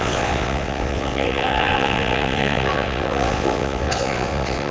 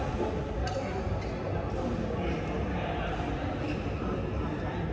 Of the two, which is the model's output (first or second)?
first